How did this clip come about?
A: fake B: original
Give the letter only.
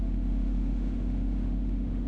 A